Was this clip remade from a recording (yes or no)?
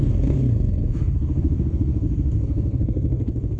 yes